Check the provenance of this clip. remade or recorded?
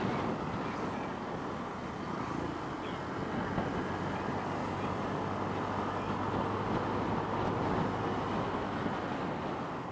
recorded